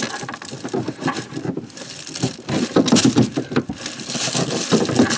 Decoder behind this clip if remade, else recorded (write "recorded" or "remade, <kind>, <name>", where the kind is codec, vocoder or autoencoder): recorded